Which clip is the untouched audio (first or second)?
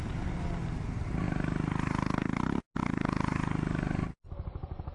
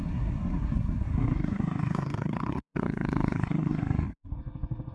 first